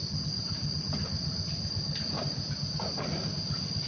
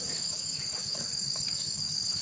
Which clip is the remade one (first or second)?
second